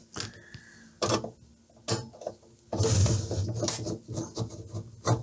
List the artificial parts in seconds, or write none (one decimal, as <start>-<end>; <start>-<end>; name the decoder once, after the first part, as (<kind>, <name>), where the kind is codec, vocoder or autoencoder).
none